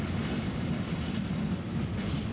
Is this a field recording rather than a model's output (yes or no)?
yes